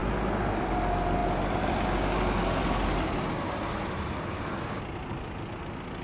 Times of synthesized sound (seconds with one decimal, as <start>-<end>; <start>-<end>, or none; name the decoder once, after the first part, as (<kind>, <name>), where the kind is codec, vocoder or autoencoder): none